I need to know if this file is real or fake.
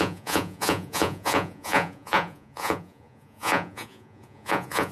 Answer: fake